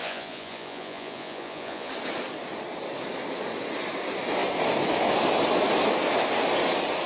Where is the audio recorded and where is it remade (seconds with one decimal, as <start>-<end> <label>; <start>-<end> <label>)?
0.0-1.9 remade; 1.9-7.1 recorded